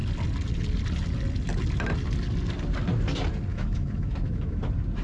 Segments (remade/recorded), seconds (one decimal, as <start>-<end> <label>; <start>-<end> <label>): 0.0-3.5 recorded; 3.5-4.6 remade; 4.6-5.0 recorded